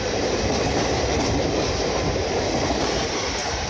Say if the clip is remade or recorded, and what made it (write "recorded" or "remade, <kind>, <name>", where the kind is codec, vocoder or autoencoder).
remade, vocoder, BigVGAN v2